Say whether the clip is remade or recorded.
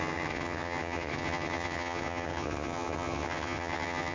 remade